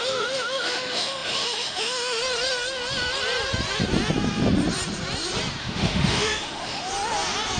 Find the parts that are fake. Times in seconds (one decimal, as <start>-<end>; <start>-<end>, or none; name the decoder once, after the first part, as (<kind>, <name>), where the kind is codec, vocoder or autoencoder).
0.0-2.2 (autoencoder, DAC-VAE); 5.6-6.9